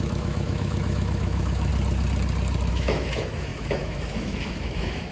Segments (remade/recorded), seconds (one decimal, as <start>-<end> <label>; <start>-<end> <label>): 0.0-1.7 remade; 1.7-2.7 recorded; 2.7-5.1 remade